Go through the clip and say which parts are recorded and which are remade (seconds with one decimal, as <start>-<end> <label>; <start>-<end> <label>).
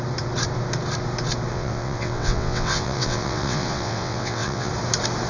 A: 0.0-1.5 recorded; 1.5-4.7 remade; 4.7-5.3 recorded